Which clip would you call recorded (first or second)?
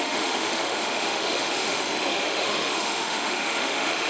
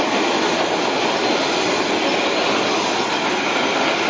second